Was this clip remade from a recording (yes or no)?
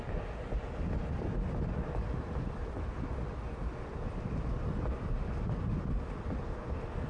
no